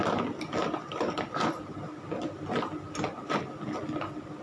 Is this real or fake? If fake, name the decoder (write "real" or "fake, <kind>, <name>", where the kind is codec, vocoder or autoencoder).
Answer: real